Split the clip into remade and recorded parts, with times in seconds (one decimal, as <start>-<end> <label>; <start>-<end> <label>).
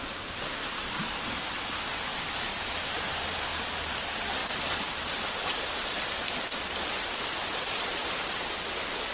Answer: 0.0-0.7 recorded; 0.7-1.3 remade; 1.3-2.1 recorded; 2.1-3.2 remade; 3.2-7.4 recorded; 7.4-8.6 remade; 8.6-9.1 recorded